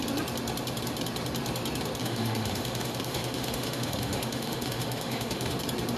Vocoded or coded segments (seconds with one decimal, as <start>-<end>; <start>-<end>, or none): 2.0-5.6